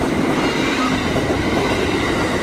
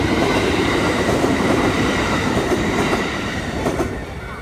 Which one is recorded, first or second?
first